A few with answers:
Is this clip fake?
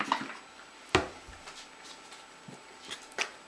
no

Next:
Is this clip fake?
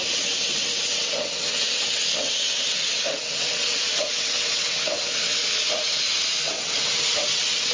yes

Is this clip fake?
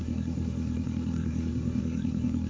yes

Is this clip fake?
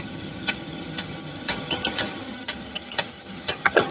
yes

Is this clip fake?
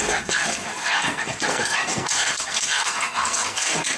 yes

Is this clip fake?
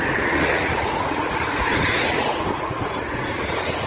yes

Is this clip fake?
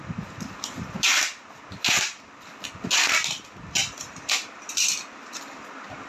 no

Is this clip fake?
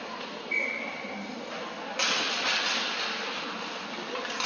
no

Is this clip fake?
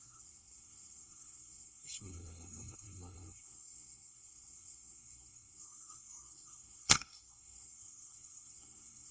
yes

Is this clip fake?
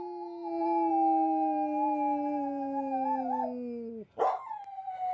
no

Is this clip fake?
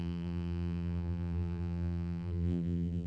yes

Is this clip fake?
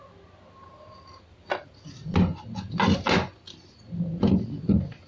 no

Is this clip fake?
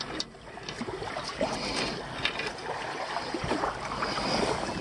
no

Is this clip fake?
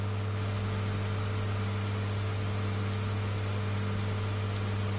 no